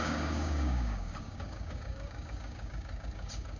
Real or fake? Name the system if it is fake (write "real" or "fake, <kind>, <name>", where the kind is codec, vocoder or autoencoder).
fake, codec, DAC